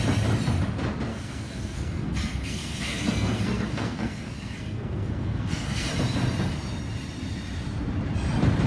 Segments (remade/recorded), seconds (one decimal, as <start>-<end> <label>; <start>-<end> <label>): 0.0-1.1 recorded; 1.1-5.9 remade; 5.9-8.7 recorded